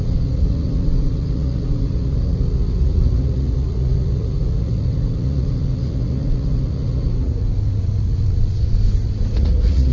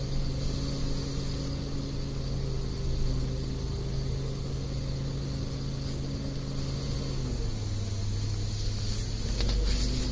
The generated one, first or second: first